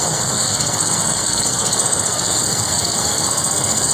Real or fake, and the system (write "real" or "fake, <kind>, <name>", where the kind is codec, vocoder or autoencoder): fake, codec, SNAC